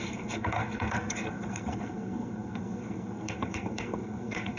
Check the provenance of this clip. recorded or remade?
remade